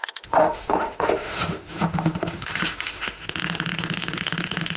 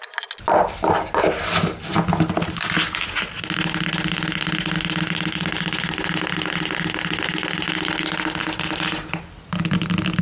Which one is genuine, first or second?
second